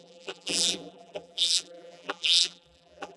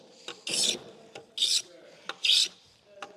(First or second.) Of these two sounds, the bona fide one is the second